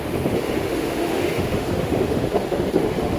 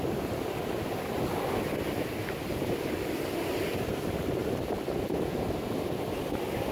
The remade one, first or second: first